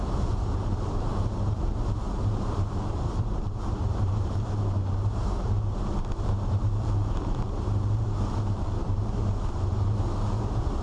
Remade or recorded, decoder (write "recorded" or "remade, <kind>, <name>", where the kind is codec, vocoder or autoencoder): remade, vocoder, BigVGAN v2